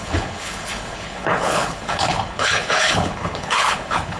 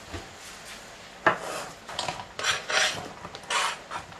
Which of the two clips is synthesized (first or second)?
first